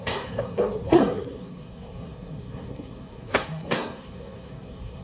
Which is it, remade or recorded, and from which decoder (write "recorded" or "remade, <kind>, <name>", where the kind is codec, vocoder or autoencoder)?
remade, codec, SNAC